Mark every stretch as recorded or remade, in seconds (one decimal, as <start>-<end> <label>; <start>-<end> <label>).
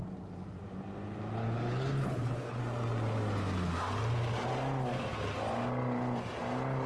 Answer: 0.0-1.4 recorded; 1.4-2.6 remade; 2.6-6.9 recorded